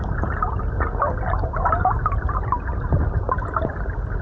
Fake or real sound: real